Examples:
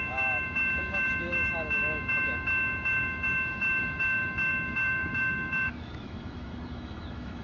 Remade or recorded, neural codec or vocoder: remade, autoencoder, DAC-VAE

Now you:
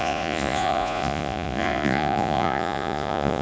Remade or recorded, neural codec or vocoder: remade, vocoder, Vocos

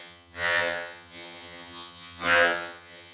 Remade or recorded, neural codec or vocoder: remade, vocoder, HiFi-GAN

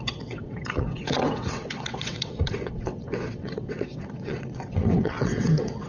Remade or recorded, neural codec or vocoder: remade, vocoder, WaveNeXt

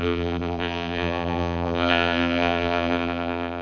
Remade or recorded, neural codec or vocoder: remade, vocoder, BigVGAN v2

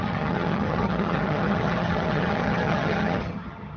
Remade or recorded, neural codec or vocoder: remade, vocoder, HiFi-GAN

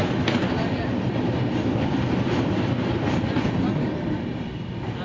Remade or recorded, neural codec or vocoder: recorded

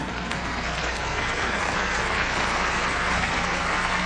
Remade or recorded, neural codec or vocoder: remade, codec, SNAC